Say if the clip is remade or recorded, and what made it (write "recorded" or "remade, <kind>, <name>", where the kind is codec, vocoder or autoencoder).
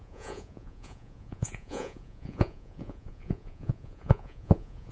remade, vocoder, Vocos